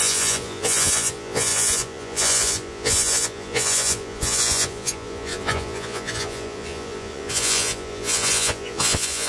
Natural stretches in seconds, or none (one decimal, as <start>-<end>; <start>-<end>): none